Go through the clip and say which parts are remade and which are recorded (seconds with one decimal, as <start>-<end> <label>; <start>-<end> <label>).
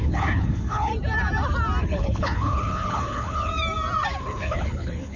0.0-0.9 remade; 0.9-1.8 recorded; 1.8-3.5 remade; 3.5-4.2 recorded; 4.2-5.2 remade